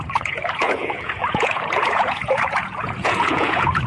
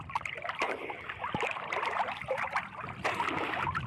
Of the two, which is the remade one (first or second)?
first